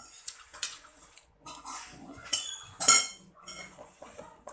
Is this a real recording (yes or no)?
no